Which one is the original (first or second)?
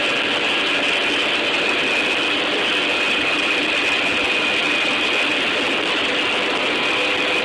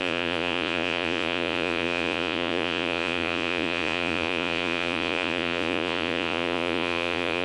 first